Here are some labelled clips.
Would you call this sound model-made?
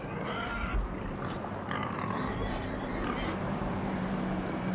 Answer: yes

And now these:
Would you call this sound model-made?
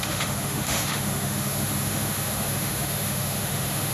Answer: yes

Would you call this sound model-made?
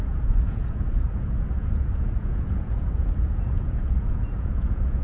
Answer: yes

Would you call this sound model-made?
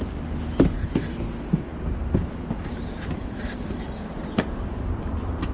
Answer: no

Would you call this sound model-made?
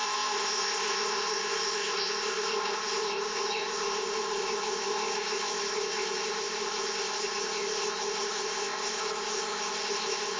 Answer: yes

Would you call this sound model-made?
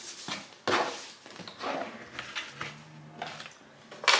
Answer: no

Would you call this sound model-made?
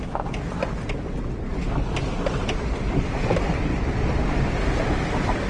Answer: no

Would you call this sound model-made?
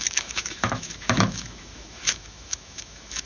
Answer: yes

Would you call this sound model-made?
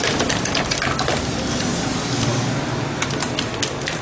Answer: no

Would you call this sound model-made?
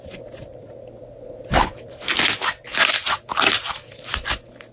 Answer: no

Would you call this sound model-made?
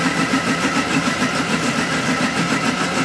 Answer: yes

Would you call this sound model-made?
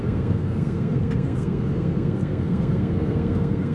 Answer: yes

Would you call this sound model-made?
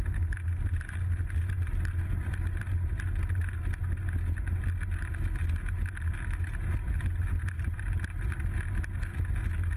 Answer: no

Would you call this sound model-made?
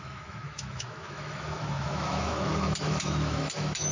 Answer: yes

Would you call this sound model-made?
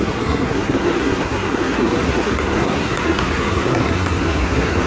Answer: yes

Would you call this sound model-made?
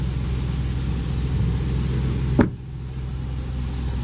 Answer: no